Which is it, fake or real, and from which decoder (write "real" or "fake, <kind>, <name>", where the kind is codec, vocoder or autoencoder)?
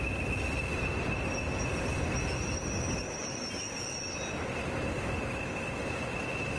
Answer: real